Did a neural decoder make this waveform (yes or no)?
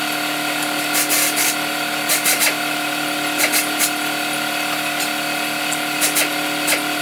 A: no